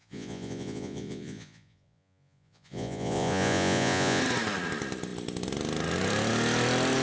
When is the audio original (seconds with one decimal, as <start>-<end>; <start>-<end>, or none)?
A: 4.2-7.0